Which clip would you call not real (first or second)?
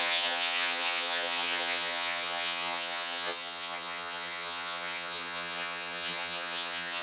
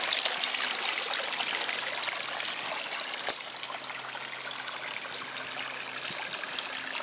first